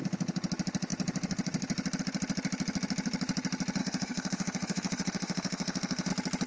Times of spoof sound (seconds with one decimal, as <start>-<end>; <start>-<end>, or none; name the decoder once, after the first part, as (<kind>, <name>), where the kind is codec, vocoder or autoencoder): 3.8-6.1 (autoencoder, DAC-VAE)